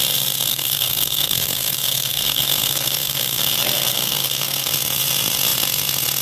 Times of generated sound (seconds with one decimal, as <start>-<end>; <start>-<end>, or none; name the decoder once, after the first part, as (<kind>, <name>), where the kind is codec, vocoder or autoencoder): 0.5-3.4 (codec, SNAC); 3.9-4.7